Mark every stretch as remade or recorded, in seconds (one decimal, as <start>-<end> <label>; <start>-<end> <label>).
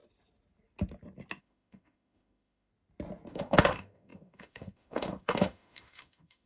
0.0-1.4 recorded; 1.4-2.7 remade; 2.7-3.3 recorded; 3.3-6.5 remade